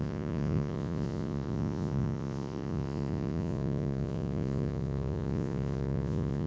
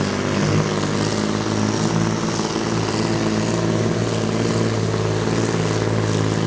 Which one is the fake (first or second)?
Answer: first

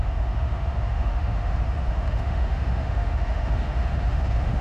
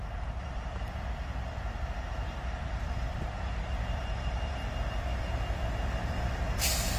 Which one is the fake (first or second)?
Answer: first